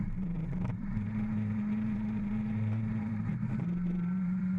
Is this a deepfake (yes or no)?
yes